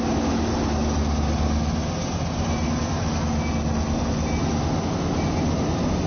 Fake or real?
real